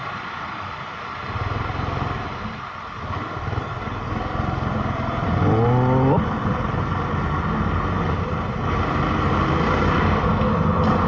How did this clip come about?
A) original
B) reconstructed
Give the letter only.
A